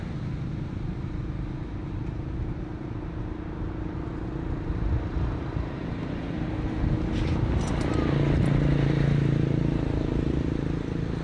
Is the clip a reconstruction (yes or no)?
no